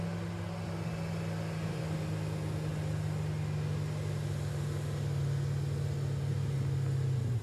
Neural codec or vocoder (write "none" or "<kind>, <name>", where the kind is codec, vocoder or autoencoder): none